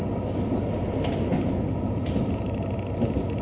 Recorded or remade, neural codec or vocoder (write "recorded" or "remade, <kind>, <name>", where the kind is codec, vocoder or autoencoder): recorded